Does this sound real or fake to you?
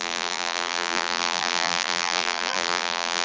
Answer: fake